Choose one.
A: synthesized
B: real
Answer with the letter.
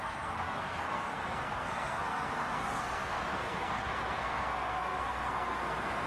A